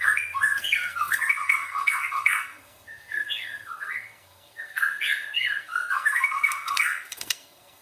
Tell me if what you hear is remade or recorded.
remade